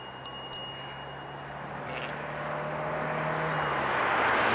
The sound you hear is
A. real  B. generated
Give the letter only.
A